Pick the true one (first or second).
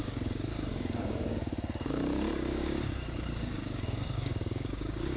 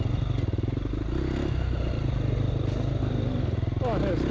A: second